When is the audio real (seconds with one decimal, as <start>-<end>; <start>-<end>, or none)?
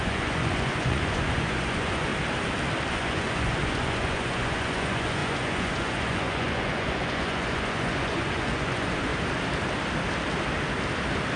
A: 2.1-2.9; 9.1-11.4